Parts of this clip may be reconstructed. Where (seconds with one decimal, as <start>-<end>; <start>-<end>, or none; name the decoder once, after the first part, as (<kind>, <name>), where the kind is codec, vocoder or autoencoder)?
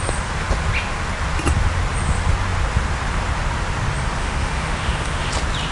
4.2-5.3 (autoencoder, DAC-VAE)